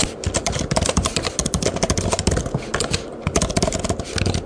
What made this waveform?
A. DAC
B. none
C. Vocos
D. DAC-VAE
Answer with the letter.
B